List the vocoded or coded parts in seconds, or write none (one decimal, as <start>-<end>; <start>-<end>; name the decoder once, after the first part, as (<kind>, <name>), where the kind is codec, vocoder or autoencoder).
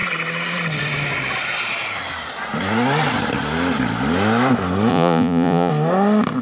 4.9-5.7 (vocoder, Vocos)